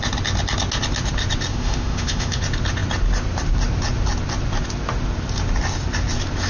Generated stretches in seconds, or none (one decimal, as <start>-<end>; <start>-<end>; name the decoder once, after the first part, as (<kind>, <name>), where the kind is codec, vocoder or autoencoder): 1.5-2.4 (autoencoder, DAC-VAE)